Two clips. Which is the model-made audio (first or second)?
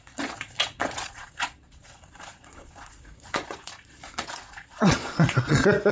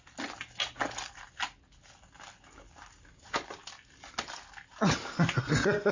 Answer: first